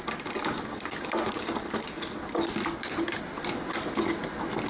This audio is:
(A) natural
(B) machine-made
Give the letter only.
A